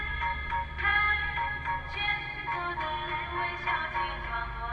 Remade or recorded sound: recorded